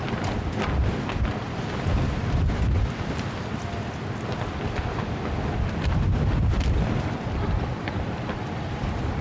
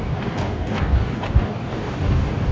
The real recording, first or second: first